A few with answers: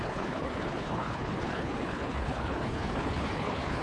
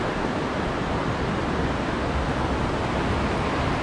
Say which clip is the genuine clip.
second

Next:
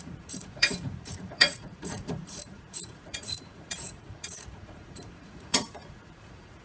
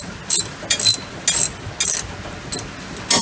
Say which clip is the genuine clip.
second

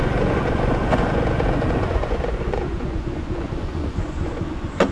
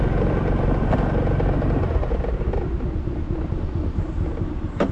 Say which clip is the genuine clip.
second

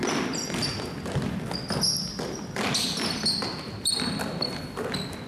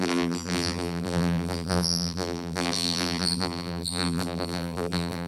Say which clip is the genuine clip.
first